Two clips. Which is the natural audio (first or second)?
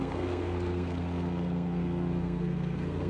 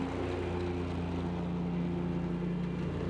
second